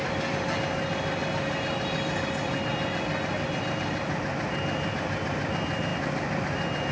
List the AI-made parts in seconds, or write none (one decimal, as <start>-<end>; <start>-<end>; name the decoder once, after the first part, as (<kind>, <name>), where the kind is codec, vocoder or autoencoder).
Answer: none